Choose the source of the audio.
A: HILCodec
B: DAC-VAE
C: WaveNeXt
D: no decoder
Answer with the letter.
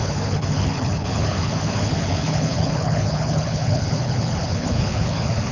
A